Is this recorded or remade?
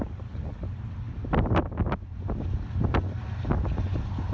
recorded